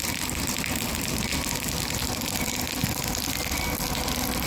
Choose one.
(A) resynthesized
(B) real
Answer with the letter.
B